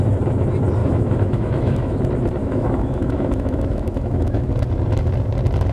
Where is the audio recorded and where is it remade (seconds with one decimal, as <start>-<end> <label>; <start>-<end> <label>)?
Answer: 0.0-0.8 recorded; 0.8-2.0 remade; 2.0-2.4 recorded; 2.4-4.5 remade; 4.5-5.7 recorded